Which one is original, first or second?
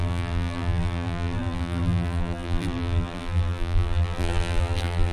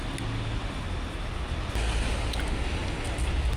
second